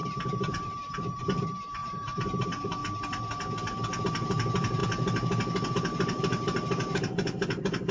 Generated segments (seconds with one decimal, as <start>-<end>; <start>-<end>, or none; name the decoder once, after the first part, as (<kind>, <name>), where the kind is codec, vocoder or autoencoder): 0.0-2.8 (vocoder, BigVGAN v2); 4.0-4.8; 5.7-7.9